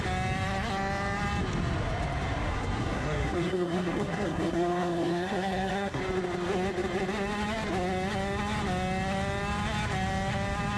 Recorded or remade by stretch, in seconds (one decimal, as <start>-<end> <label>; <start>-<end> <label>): 0.0-2.5 recorded; 2.5-6.0 remade; 6.0-10.8 recorded